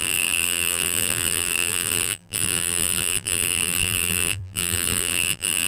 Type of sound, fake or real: fake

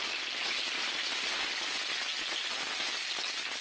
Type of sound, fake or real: real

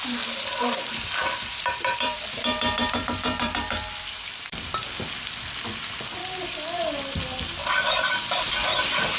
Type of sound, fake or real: fake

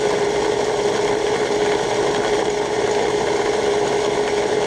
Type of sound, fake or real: real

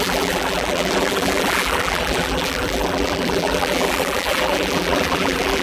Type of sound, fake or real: fake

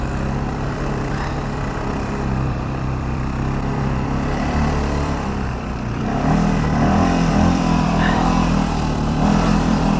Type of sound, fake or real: fake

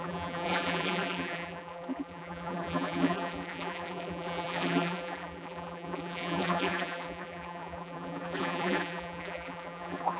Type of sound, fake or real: fake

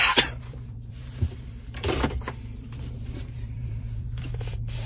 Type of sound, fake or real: fake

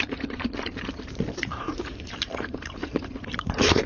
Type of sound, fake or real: fake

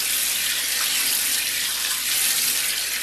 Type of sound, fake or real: fake